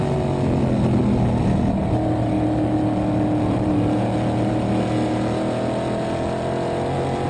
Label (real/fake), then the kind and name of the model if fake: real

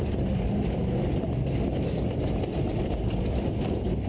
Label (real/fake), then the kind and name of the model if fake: real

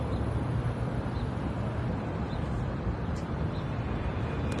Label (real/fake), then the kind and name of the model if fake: fake, vocoder, BigVGAN v2